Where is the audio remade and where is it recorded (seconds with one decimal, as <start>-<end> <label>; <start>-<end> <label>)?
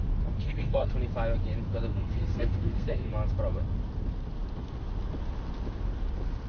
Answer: 0.0-0.4 recorded; 0.4-0.9 remade; 0.9-1.9 recorded; 1.9-3.1 remade; 3.1-6.5 recorded